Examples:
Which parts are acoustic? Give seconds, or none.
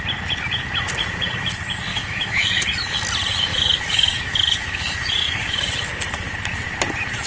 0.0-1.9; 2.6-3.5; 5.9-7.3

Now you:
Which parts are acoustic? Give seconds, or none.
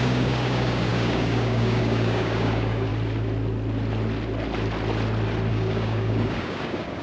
2.9-5.5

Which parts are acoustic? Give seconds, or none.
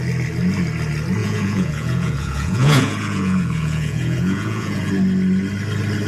0.0-1.2; 4.9-6.1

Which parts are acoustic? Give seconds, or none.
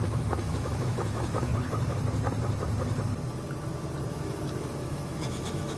1.5-4.1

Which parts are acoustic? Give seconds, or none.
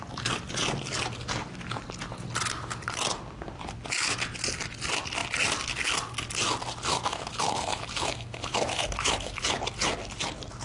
0.0-6.9; 9.5-10.6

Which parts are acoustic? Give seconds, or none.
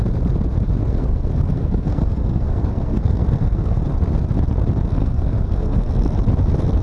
0.0-0.8; 3.9-5.0; 5.9-6.8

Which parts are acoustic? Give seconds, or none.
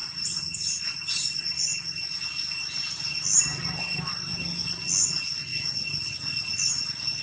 0.8-7.2